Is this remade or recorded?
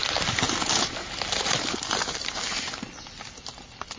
recorded